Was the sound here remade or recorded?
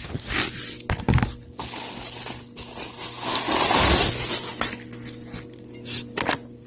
recorded